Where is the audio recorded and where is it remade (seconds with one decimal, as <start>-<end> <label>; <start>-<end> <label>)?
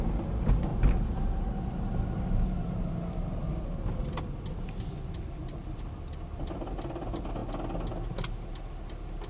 0.0-9.3 recorded